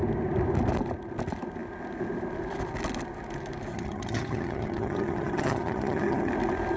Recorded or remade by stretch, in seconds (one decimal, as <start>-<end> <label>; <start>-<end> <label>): 0.0-3.7 recorded; 3.7-6.3 remade; 6.3-6.8 recorded

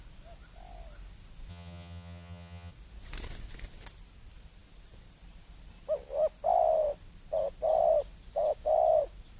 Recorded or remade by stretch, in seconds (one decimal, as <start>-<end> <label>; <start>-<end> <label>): 0.0-1.5 recorded; 1.5-2.7 remade; 2.7-9.4 recorded